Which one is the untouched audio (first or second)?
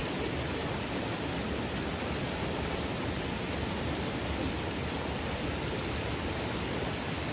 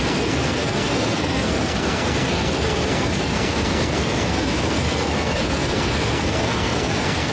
first